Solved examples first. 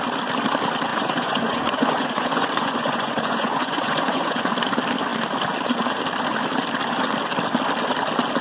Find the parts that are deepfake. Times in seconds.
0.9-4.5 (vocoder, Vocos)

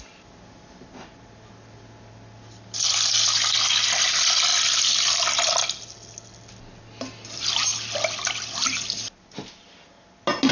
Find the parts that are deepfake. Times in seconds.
none

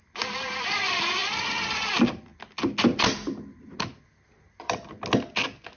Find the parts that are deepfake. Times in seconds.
none

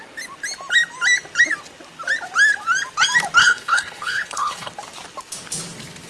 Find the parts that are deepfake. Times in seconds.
3.4-4.7 (codec, HILCodec)

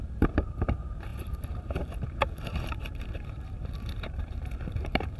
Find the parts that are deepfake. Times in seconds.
0.0-5.2 (vocoder, BigVGAN v2)

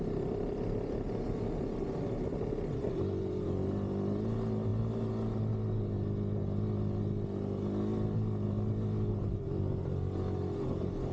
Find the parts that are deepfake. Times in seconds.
none